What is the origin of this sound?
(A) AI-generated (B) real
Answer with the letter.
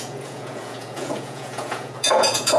A